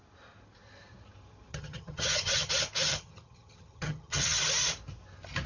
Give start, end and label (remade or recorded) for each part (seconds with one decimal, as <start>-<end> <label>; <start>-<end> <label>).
0.0-1.5 recorded; 1.5-2.5 remade; 2.5-2.9 recorded; 2.9-4.4 remade; 4.4-5.5 recorded